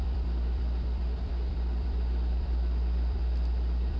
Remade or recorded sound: remade